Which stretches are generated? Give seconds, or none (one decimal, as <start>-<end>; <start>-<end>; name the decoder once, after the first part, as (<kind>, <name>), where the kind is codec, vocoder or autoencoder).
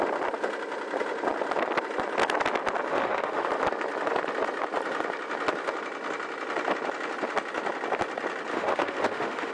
2.9-3.5 (autoencoder, DAC-VAE); 8.5-9.5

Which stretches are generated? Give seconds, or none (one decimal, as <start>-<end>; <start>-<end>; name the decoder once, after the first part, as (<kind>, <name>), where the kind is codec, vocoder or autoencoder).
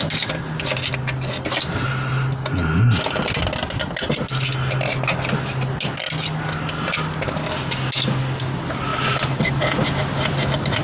none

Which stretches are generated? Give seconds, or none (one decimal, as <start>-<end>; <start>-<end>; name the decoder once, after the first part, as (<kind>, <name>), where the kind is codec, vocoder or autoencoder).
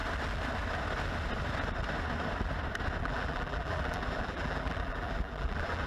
3.0-5.9 (vocoder, BigVGAN v2)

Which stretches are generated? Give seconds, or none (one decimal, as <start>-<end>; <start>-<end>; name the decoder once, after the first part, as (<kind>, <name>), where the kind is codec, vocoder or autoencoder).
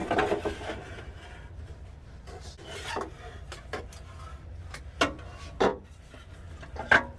none